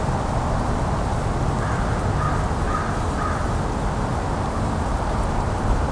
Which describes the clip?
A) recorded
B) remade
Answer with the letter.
A